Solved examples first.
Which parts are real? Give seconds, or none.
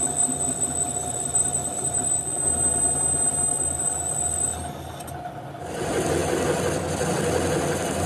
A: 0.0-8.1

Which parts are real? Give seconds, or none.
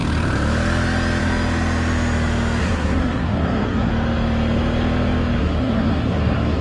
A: 0.0-2.6; 3.9-5.4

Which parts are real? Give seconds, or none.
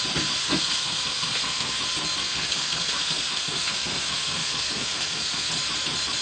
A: 0.0-0.4; 1.8-2.2; 5.5-6.2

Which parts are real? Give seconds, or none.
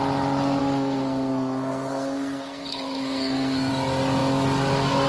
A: 0.0-0.6; 3.7-5.1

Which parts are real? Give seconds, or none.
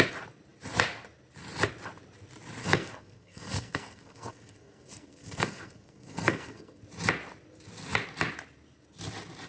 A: 0.0-2.6; 6.8-9.5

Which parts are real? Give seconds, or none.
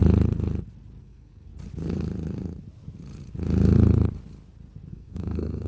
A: 0.0-1.0; 1.5-4.9